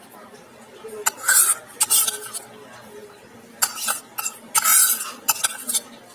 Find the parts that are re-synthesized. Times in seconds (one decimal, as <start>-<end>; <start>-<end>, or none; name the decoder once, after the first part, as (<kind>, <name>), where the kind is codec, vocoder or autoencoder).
4.7-5.4 (vocoder, BigVGAN v2)